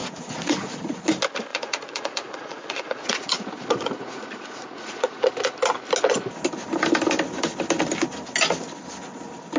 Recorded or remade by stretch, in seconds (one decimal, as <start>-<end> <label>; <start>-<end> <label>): 0.0-1.0 remade; 1.0-1.5 recorded; 1.5-5.3 remade; 5.3-9.6 recorded